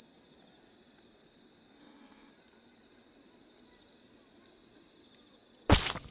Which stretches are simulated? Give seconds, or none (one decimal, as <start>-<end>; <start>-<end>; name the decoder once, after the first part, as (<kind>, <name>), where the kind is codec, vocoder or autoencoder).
1.8-2.3 (codec, SNAC)